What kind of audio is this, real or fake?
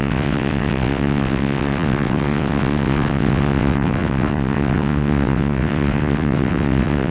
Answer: fake